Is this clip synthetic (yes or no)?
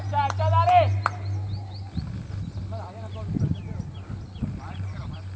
no